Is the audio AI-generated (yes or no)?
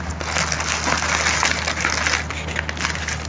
no